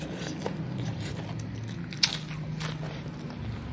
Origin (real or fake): real